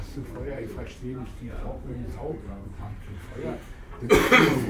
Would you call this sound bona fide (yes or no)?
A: no